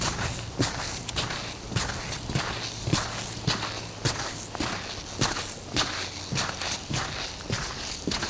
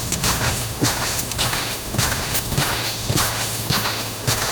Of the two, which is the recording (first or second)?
first